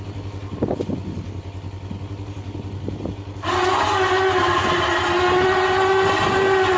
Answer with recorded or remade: recorded